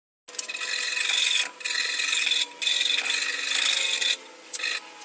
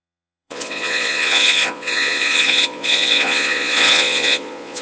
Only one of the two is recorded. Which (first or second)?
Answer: first